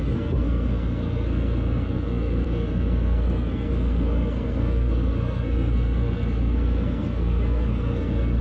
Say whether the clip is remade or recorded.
remade